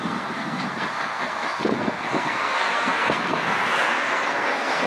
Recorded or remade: remade